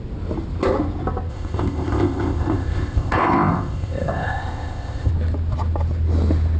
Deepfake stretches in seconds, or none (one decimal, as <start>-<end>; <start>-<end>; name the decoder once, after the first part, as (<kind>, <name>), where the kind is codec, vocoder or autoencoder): 1.3-5.1 (codec, ZipCodec)